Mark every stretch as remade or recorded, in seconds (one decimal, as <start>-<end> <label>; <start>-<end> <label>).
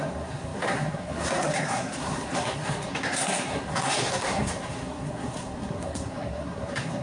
0.0-7.0 remade